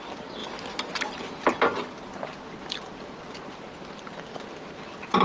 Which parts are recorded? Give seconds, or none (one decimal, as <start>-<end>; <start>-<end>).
0.0-5.2